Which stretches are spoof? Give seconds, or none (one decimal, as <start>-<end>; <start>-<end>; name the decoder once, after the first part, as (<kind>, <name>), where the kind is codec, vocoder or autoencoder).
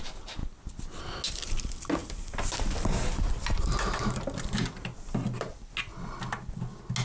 none